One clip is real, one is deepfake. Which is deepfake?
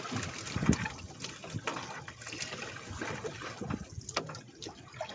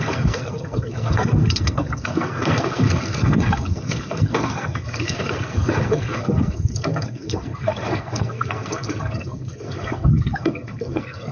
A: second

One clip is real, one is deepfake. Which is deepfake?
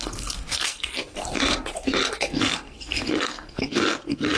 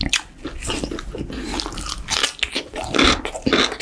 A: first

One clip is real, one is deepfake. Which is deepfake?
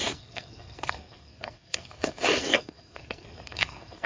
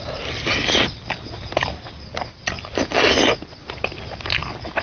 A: first